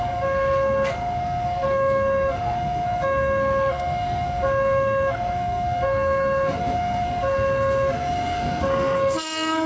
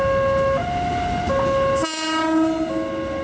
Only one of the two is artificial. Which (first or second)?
first